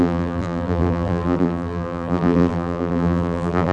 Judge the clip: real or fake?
fake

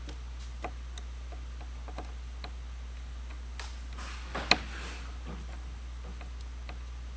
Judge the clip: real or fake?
real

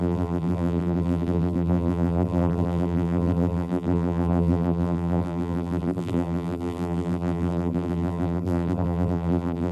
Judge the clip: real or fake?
fake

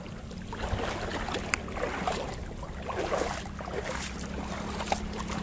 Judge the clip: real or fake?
real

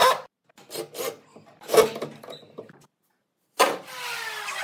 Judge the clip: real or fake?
real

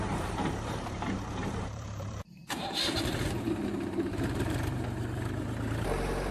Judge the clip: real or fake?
fake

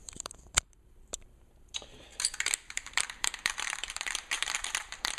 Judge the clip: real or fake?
fake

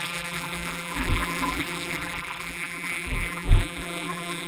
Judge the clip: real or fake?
fake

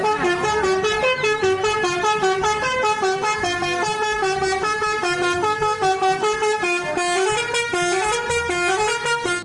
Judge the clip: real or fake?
real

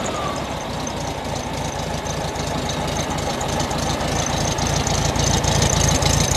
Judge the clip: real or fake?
fake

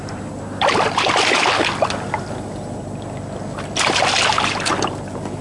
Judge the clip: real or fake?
real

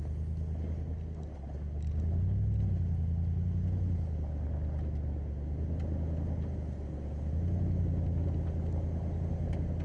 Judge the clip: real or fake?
real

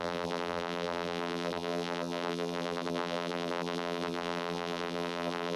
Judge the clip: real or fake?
fake